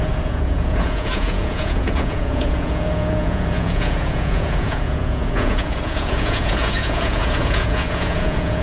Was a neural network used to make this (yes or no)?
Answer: yes